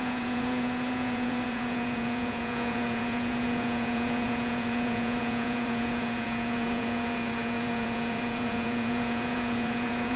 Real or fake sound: fake